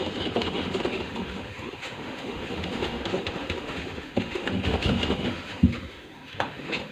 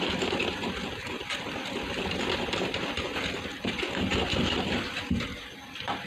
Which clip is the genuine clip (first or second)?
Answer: second